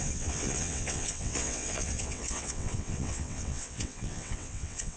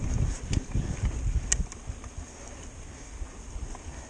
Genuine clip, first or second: second